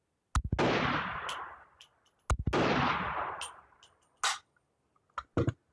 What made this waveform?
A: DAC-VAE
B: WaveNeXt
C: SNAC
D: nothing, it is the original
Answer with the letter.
D